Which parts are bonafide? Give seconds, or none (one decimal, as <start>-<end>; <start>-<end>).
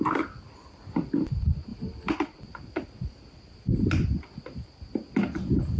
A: 0.0-5.8